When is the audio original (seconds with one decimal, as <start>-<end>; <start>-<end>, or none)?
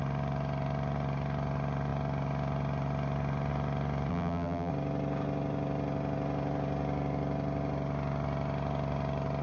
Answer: 0.0-4.1; 4.7-9.4